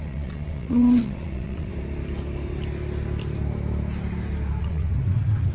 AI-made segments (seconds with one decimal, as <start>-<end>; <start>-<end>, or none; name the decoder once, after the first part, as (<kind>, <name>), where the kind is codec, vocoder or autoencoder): 0.0-1.7 (vocoder, WaveNeXt); 4.6-5.5